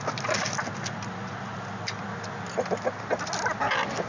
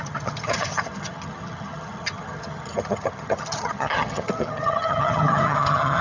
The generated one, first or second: second